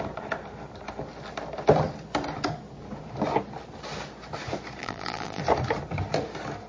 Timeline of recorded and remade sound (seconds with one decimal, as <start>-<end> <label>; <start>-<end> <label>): 0.0-4.8 recorded; 4.8-5.4 remade; 5.4-6.7 recorded